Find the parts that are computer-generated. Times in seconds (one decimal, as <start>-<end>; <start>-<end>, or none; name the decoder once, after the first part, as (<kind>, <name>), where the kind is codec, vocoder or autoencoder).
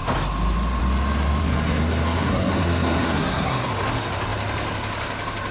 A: 1.4-3.7 (codec, SNAC)